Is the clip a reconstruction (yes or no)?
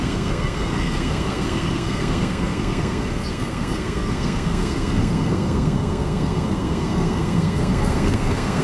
yes